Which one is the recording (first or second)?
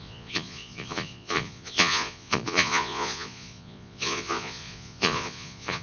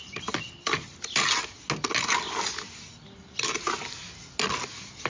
second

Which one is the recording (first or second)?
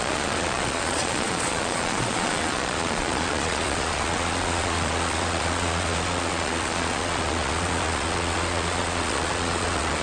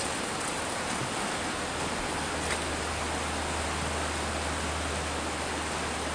second